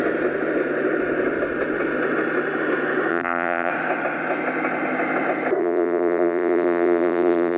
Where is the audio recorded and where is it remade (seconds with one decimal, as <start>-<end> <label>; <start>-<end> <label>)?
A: 0.0-3.1 recorded; 3.1-3.7 remade; 3.7-5.6 recorded; 5.6-7.6 remade